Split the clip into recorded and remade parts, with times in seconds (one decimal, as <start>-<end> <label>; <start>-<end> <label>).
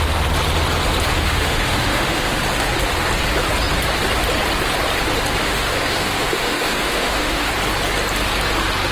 0.0-1.2 recorded; 1.2-2.4 remade; 2.4-5.4 recorded; 5.4-7.5 remade; 7.5-8.9 recorded